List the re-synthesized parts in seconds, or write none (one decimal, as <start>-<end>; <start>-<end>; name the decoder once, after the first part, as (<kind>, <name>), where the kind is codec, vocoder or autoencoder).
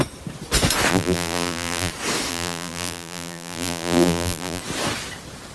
0.9-1.9 (vocoder, BigVGAN v2); 2.3-4.6